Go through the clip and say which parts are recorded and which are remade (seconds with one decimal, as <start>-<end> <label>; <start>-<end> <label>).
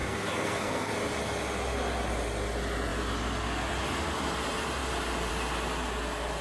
0.0-0.9 remade; 0.9-6.4 recorded